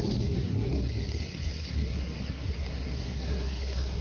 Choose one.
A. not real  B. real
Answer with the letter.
A